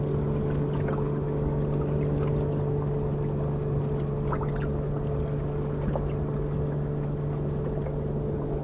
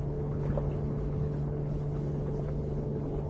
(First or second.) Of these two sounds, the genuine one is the first